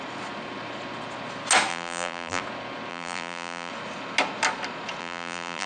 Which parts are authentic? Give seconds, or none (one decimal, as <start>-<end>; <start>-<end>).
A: 0.0-1.7; 2.4-2.9; 3.7-5.0